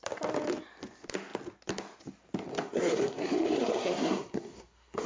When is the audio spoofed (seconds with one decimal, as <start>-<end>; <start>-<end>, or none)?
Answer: 2.5-5.1